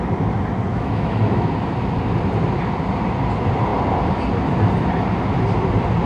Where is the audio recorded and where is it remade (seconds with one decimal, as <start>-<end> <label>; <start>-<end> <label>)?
0.0-0.7 recorded; 0.7-1.5 remade; 1.5-6.1 recorded